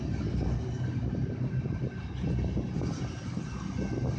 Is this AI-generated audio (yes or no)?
no